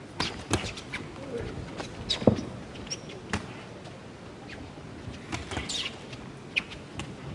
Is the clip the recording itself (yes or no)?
yes